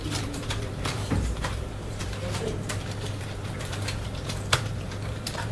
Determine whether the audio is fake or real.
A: fake